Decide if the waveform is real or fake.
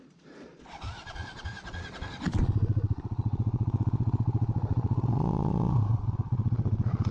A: fake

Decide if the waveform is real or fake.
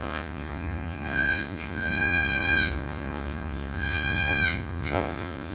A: fake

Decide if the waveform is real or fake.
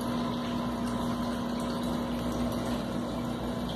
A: real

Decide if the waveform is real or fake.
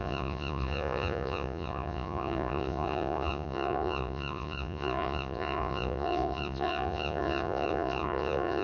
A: fake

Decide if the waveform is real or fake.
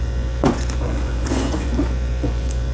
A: fake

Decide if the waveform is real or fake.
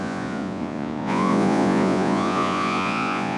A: fake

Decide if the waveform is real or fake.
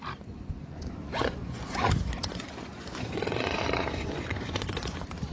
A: fake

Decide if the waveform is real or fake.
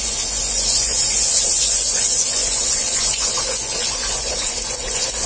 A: fake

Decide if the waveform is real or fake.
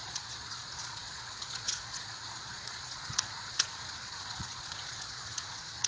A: fake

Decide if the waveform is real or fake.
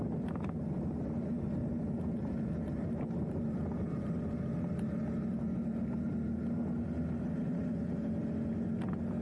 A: real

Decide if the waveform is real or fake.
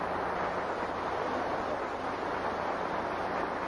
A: real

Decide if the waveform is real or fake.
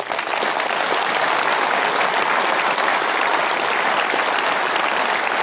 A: real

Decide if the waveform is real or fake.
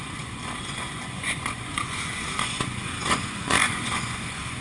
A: fake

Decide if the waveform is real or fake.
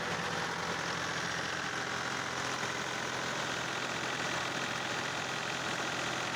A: real